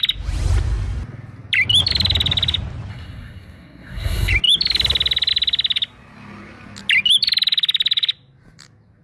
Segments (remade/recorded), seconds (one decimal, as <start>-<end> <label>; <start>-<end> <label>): 0.0-2.9 recorded; 2.9-4.3 remade; 4.3-9.0 recorded